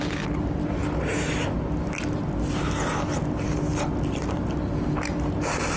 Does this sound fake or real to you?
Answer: real